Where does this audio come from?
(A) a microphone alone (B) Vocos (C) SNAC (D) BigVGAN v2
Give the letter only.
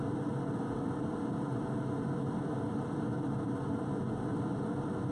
A